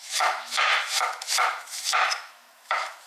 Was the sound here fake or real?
fake